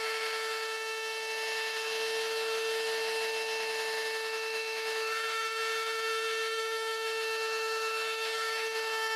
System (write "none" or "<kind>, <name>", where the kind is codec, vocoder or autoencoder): autoencoder, DAC-VAE